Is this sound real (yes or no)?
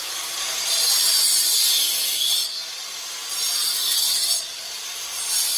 yes